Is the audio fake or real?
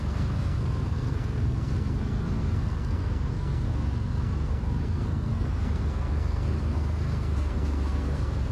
fake